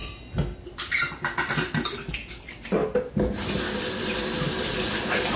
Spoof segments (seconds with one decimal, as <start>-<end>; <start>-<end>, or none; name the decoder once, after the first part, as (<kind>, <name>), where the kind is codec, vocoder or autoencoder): 0.0-2.1 (vocoder, BigVGAN v2)